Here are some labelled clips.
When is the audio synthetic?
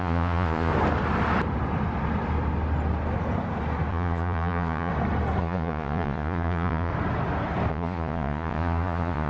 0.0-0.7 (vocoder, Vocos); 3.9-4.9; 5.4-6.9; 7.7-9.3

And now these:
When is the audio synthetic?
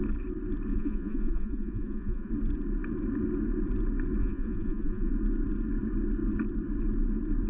0.7-2.3 (vocoder, Vocos); 4.2-5.1